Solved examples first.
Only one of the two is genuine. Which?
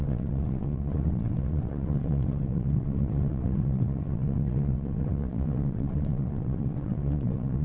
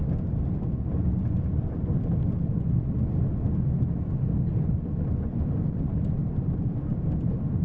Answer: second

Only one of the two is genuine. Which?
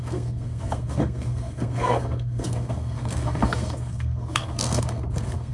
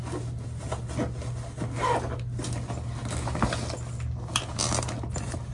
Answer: second